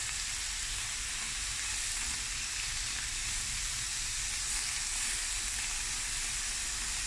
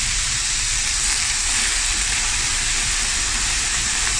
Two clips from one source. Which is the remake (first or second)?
second